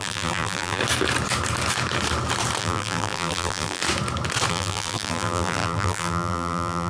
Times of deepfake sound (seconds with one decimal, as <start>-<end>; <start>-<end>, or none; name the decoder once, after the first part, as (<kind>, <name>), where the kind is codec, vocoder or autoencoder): 0.0-0.8 (vocoder, BigVGAN v2); 2.6-3.8; 4.5-6.9